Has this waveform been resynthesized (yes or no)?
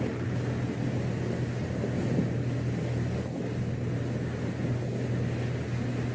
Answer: no